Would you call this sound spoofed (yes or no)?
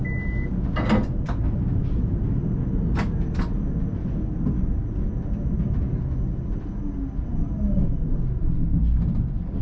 no